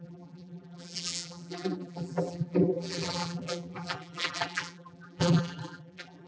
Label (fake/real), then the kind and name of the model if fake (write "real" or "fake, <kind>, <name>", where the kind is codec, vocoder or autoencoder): fake, vocoder, BigVGAN v2